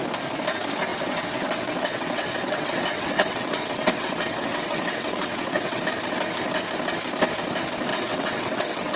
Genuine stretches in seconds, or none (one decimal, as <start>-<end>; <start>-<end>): 0.0-0.9; 5.8-7.9